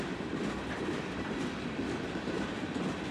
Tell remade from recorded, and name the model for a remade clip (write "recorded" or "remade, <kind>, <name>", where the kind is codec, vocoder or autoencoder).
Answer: remade, vocoder, BigVGAN v2